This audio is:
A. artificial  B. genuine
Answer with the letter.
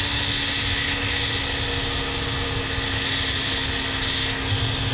B